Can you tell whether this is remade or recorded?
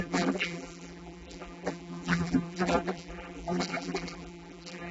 remade